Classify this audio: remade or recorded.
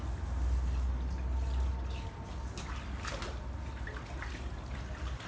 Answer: recorded